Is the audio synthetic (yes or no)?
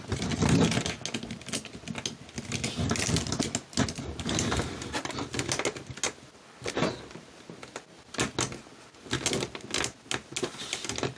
no